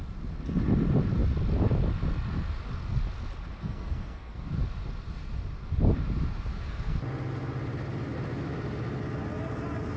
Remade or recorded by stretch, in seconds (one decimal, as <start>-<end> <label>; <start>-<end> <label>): 0.0-3.6 recorded; 3.6-4.5 remade; 4.5-6.5 recorded; 6.5-7.0 remade; 7.0-10.0 recorded